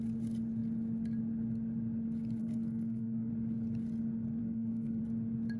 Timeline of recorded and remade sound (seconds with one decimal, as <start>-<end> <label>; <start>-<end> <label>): 0.0-2.4 recorded; 2.4-3.3 remade; 3.3-4.4 recorded; 4.4-5.0 remade; 5.0-5.6 recorded